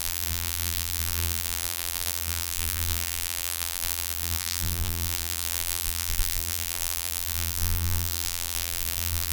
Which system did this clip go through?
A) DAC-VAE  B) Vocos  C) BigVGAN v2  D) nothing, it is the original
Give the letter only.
C